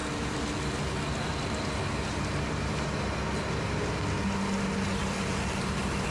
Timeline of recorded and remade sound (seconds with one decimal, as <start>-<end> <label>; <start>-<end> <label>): 0.0-6.1 recorded